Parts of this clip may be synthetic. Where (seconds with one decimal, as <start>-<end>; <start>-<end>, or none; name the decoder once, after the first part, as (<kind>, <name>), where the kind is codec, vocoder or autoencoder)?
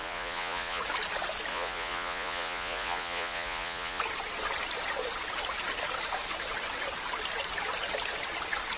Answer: 0.0-0.8 (vocoder, Vocos); 1.5-4.0